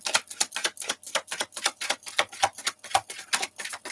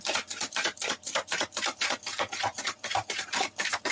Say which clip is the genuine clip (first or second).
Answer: first